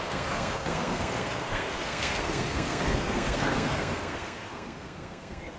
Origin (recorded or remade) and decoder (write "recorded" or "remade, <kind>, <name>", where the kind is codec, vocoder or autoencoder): remade, codec, SNAC